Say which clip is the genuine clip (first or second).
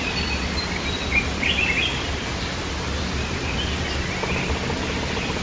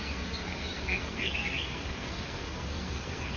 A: first